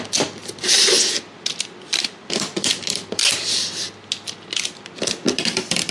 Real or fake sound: real